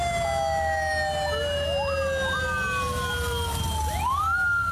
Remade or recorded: recorded